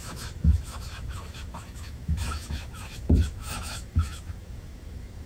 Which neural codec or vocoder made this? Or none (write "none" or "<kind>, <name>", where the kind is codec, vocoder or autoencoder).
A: autoencoder, DAC-VAE